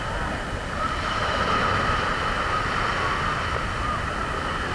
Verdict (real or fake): real